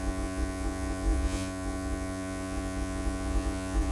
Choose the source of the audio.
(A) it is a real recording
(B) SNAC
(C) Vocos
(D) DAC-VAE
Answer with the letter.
C